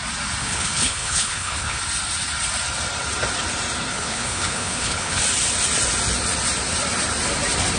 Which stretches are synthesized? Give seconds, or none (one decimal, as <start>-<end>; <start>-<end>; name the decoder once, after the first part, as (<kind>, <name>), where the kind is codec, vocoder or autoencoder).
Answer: 0.4-1.8 (codec, HILCodec); 3.9-5.2